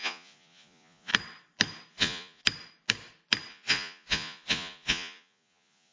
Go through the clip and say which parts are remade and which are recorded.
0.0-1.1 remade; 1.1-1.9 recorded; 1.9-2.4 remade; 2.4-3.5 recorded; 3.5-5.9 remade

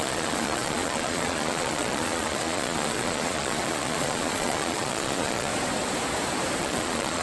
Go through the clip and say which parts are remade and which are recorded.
0.0-5.5 remade; 5.5-6.6 recorded; 6.6-7.2 remade

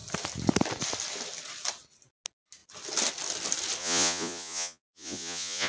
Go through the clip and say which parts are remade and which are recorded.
0.0-3.8 recorded; 3.8-5.7 remade

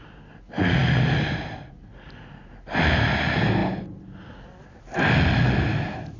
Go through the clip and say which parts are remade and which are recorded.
0.0-6.2 recorded